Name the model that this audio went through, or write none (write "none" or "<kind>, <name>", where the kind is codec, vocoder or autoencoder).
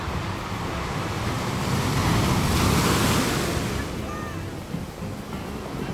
none